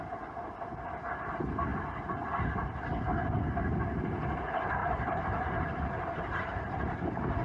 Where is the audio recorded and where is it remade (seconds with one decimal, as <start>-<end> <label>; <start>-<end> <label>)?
0.0-4.8 recorded; 4.8-6.4 remade; 6.4-7.4 recorded